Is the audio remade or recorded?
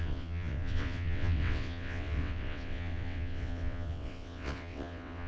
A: remade